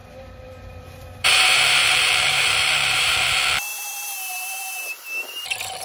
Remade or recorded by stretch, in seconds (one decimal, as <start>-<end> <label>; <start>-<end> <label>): 0.0-3.3 remade; 3.3-3.7 recorded; 3.7-4.8 remade; 4.8-5.8 recorded

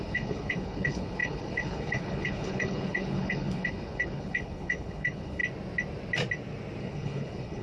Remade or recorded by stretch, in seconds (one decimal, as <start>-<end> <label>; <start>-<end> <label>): 0.0-5.4 remade; 5.4-6.8 recorded; 6.8-7.6 remade

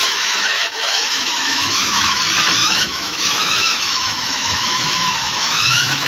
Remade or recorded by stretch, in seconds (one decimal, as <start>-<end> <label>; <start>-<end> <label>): 0.0-2.2 remade; 2.2-2.6 recorded; 2.6-6.1 remade

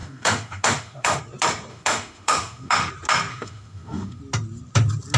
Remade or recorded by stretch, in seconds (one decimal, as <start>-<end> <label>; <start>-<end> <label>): 0.0-1.2 remade; 1.2-1.7 recorded; 1.7-2.9 remade; 2.9-3.3 recorded; 3.3-4.2 remade; 4.2-5.2 recorded

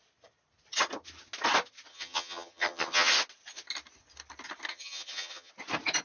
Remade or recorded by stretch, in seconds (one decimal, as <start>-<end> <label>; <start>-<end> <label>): 0.0-1.9 recorded; 1.9-3.1 remade; 3.1-4.7 recorded; 4.7-5.5 remade; 5.5-6.0 recorded

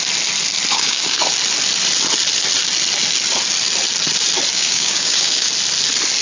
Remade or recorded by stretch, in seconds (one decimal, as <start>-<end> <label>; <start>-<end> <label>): 0.0-0.7 recorded; 0.7-1.2 remade; 1.2-4.5 recorded; 4.5-5.5 remade; 5.5-6.2 recorded

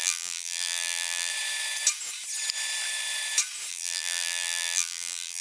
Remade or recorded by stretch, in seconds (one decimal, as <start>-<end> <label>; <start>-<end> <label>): 0.0-1.3 remade; 1.3-3.7 recorded; 3.7-5.4 remade

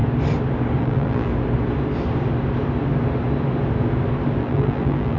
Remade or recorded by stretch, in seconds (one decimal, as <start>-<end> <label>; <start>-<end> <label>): 0.0-0.8 recorded; 0.8-1.3 remade; 1.3-4.4 recorded; 4.4-5.2 remade